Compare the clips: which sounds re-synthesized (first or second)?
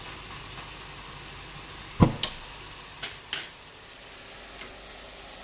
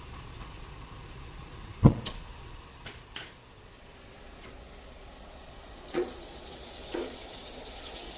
second